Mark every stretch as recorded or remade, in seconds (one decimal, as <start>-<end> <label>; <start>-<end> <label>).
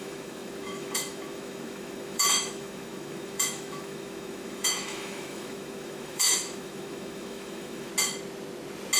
0.0-7.9 remade; 7.9-9.0 recorded